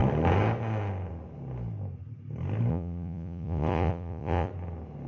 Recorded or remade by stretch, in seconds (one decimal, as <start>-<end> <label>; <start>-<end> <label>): 0.0-2.7 recorded; 2.7-4.5 remade; 4.5-5.1 recorded